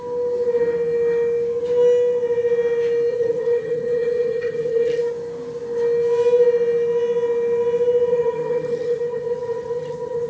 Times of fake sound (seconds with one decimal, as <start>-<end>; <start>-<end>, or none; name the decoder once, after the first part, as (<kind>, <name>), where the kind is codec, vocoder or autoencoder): 3.1-5.0 (vocoder, HiFi-GAN); 8.1-10.3